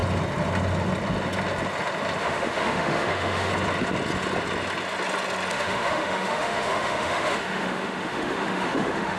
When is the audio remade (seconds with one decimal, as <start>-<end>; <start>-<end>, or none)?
2.2-3.5; 5.5-9.2